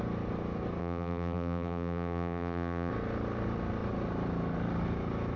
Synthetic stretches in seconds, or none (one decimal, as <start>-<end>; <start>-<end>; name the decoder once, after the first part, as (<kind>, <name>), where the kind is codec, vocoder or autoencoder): 0.8-2.9 (vocoder, BigVGAN v2)